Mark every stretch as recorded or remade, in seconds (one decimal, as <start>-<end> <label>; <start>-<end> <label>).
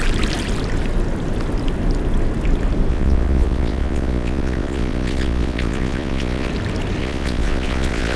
0.0-2.9 recorded; 2.9-6.5 remade; 6.5-7.0 recorded; 7.0-8.2 remade